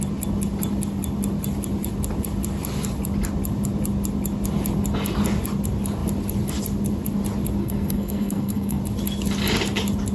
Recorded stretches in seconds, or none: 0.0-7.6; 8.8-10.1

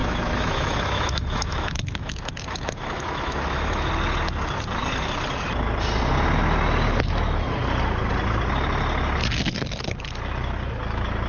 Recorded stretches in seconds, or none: 3.9-11.3

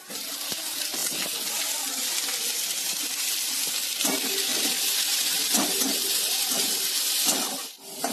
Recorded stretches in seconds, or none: 0.0-8.1